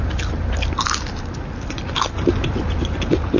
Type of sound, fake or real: real